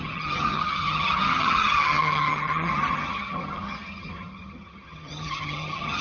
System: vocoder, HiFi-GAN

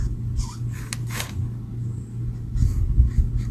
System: none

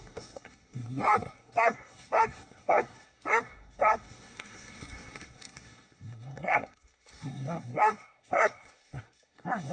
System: codec, SNAC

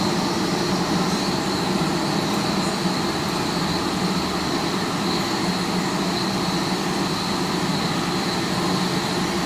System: none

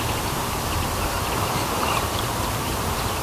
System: vocoder, BigVGAN v2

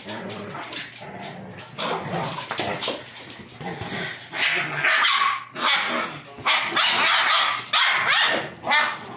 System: none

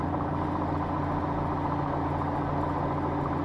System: none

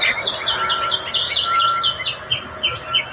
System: none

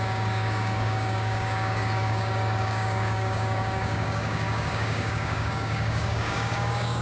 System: codec, DAC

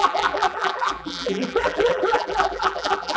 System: vocoder, BigVGAN v2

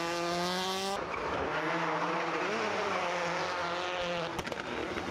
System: none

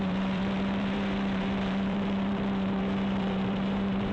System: vocoder, BigVGAN v2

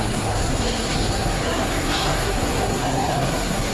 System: codec, SNAC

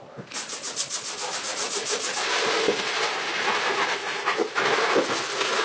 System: none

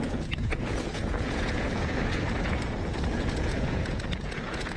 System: vocoder, Vocos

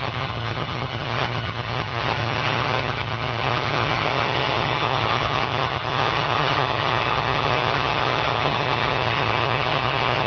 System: vocoder, HiFi-GAN